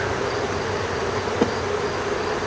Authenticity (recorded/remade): recorded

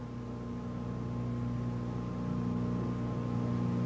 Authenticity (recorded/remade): recorded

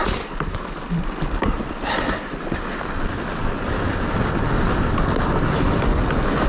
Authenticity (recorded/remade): recorded